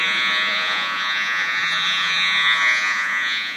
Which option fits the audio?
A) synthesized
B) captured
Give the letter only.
A